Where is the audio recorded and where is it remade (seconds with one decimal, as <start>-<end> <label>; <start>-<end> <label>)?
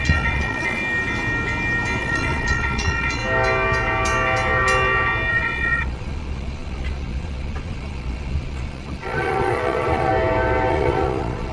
0.0-0.8 remade; 0.8-2.0 recorded; 2.0-3.2 remade; 3.2-5.3 recorded; 5.3-10.1 remade; 10.1-10.7 recorded; 10.7-11.5 remade